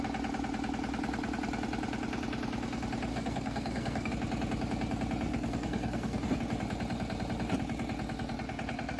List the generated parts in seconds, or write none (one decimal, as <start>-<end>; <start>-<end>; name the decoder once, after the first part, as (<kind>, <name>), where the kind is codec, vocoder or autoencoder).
3.1-4.1 (codec, SNAC); 5.3-6.4